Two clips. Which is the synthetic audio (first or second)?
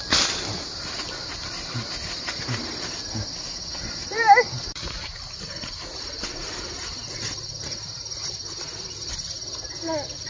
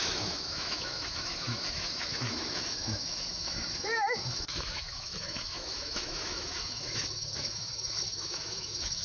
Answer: second